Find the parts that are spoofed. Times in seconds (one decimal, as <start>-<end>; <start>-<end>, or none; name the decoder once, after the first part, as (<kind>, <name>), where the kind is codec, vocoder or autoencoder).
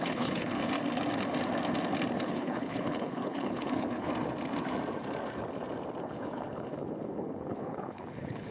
0.0-0.6 (codec, HILCodec); 2.2-4.1; 6.0-8.5